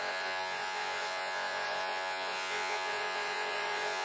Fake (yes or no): yes